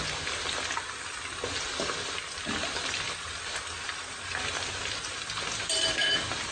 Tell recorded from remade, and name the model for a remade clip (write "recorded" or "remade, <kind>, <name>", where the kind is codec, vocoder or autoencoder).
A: recorded